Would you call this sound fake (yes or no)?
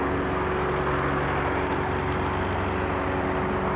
no